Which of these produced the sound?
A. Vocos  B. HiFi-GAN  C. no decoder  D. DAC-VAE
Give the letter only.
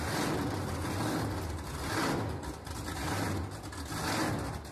C